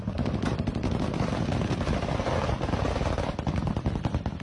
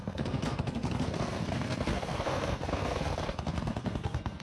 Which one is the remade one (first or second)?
second